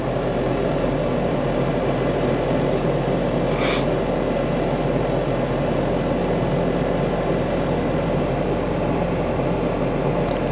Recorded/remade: recorded